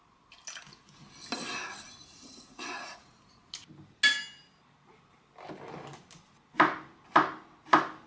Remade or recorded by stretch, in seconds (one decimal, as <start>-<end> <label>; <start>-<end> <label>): 0.0-2.0 recorded; 2.0-3.5 remade; 3.5-8.1 recorded